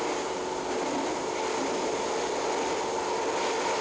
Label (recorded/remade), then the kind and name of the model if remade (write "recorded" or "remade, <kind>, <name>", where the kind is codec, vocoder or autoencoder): recorded